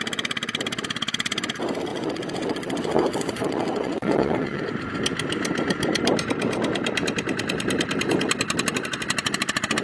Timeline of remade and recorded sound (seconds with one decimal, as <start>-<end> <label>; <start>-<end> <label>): 0.0-1.9 recorded; 1.9-4.6 remade; 4.6-9.8 recorded